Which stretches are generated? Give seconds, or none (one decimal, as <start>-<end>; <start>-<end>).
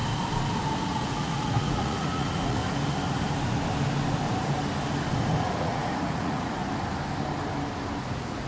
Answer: 0.9-2.6; 5.4-6.6; 8.0-8.5